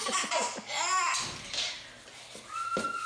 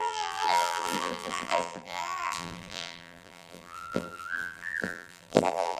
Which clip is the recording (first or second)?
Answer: first